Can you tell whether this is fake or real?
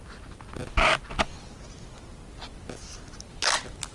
real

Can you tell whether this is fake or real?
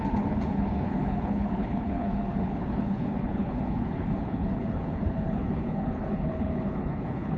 fake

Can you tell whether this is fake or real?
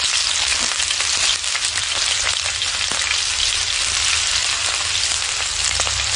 real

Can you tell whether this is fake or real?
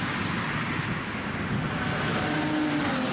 real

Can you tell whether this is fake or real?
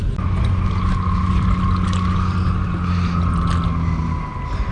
real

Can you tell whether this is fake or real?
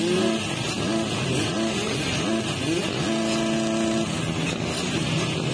real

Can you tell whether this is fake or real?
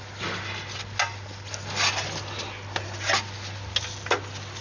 real